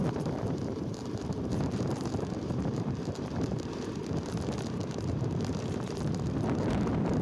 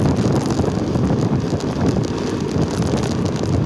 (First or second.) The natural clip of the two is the second